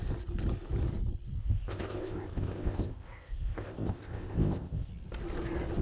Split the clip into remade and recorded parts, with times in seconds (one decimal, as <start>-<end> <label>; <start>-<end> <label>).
0.0-1.4 recorded; 1.4-4.9 remade; 4.9-5.8 recorded